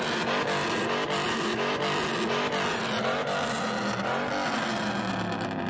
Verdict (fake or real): real